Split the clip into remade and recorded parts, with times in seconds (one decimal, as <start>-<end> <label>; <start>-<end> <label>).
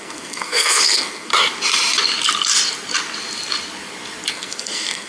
0.0-1.3 remade; 1.3-4.3 recorded; 4.3-5.1 remade